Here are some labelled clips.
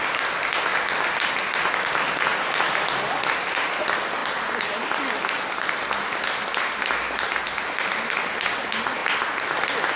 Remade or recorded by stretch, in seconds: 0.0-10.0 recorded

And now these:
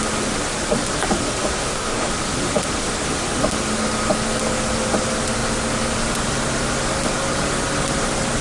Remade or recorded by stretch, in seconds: 0.0-1.4 recorded; 1.4-2.1 remade; 2.1-8.4 recorded

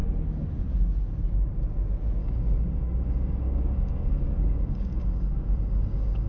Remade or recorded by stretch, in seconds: 0.0-2.2 recorded; 2.2-6.3 remade

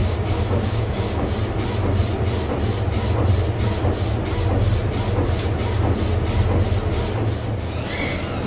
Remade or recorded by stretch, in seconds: 0.0-1.3 remade; 1.3-8.5 recorded

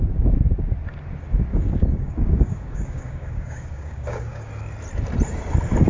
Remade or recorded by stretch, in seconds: 0.0-1.5 recorded; 1.5-4.5 remade; 4.5-5.9 recorded

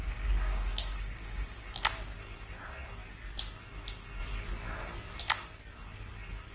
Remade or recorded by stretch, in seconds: 0.0-1.8 remade; 1.8-6.5 recorded

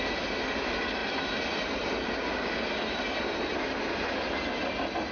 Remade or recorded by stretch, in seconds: 0.0-5.1 recorded

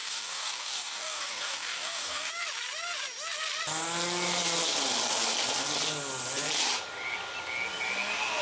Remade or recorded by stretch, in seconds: 0.0-2.3 remade; 2.3-8.4 recorded